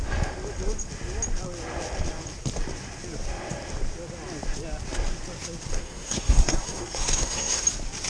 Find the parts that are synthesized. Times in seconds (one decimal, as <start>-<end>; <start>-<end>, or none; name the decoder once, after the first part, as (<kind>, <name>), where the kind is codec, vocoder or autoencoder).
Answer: 5.7-7.6 (codec, SNAC)